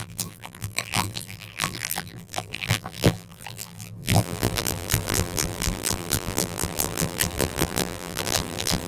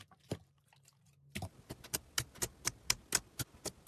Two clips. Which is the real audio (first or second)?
second